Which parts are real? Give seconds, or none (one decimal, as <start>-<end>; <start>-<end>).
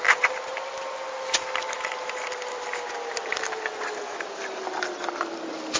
0.5-3.3